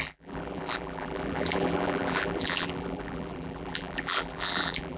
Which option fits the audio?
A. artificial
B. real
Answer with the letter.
A